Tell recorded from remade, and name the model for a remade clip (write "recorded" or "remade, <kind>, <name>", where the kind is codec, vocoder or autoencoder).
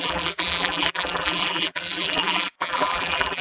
remade, vocoder, BigVGAN v2